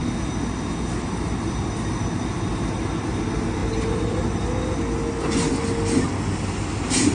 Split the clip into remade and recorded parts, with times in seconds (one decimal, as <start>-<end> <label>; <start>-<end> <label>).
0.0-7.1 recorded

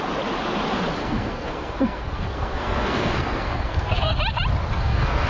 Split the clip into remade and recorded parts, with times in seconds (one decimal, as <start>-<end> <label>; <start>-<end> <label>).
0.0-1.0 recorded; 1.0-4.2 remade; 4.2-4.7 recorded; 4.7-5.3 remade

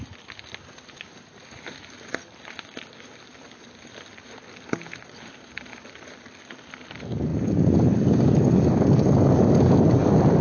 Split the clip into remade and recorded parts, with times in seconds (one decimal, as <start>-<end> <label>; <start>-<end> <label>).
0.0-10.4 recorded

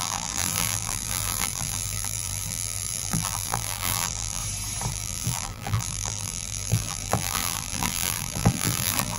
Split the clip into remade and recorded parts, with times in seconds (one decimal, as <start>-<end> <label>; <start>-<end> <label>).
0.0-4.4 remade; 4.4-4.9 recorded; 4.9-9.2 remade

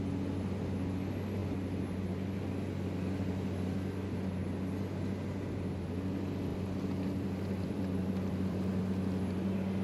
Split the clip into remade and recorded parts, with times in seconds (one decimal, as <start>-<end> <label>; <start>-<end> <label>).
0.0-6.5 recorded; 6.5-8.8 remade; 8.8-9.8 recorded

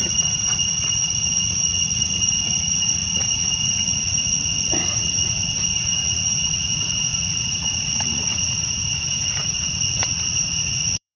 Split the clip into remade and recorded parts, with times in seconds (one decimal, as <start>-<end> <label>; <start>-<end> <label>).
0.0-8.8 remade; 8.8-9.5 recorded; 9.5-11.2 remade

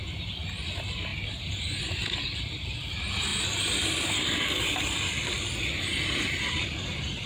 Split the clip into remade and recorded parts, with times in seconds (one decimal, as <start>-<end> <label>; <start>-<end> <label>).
0.0-7.3 recorded

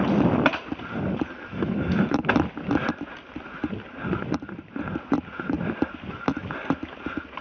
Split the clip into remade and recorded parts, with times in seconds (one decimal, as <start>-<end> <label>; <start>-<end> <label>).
0.0-1.5 recorded; 1.5-2.3 remade; 2.3-7.4 recorded